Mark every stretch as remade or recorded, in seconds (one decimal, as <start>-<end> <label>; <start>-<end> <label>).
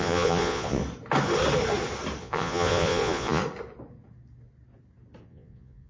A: 0.0-0.8 remade; 0.8-2.2 recorded; 2.2-3.4 remade; 3.4-5.2 recorded; 5.2-5.9 remade